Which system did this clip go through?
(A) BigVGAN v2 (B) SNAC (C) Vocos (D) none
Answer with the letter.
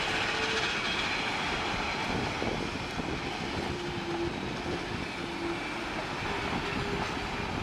D